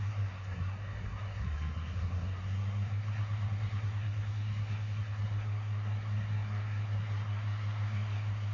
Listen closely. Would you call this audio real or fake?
fake